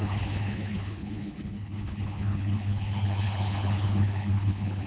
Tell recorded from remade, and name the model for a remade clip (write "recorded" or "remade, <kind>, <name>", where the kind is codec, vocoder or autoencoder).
remade, codec, HILCodec